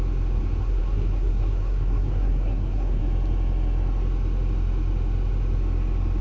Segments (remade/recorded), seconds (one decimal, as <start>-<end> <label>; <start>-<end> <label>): 0.0-0.6 recorded; 0.6-3.0 remade; 3.0-6.2 recorded